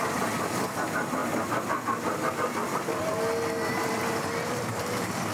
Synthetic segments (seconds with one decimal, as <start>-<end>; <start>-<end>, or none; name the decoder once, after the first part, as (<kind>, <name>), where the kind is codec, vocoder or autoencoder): 0.0-1.2 (vocoder, BigVGAN v2); 2.3-3.1; 3.8-5.3